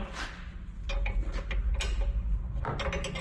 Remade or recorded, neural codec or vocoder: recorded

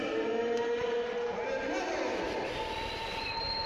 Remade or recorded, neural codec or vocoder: recorded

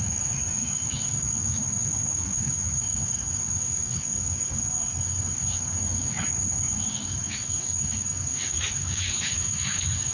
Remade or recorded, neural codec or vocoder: remade, codec, DAC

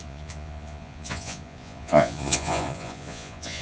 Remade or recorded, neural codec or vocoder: remade, vocoder, Vocos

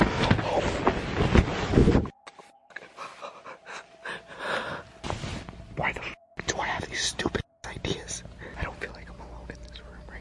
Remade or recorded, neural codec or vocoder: recorded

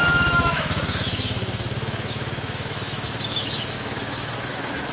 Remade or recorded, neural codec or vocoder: remade, autoencoder, DAC-VAE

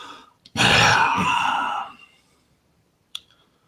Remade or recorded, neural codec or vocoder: remade, vocoder, BigVGAN v2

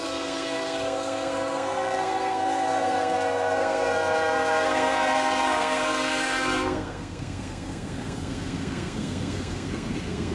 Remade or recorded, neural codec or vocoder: remade, codec, SNAC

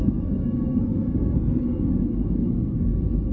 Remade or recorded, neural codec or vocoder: remade, codec, SNAC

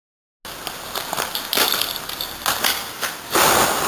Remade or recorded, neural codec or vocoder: recorded